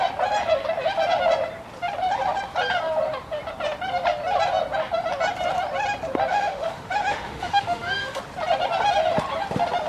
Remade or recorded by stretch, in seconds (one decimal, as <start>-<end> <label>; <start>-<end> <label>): 0.0-6.3 recorded; 6.3-8.2 remade; 8.2-9.9 recorded